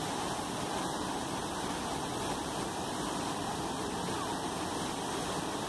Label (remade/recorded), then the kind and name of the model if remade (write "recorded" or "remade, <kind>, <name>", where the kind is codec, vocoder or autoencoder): remade, vocoder, BigVGAN v2